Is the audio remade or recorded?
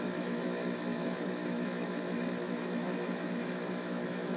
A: remade